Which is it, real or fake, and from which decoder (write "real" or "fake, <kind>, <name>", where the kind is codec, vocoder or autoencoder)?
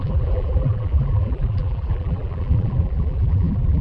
fake, vocoder, BigVGAN v2